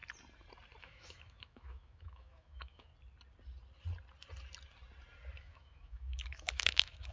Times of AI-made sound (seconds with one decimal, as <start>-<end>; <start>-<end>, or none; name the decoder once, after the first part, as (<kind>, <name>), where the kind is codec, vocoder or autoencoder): 0.8-2.9 (autoencoder, DAC-VAE); 5.4-7.1